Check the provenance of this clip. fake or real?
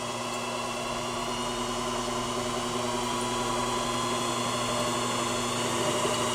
real